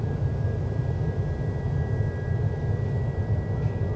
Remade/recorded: recorded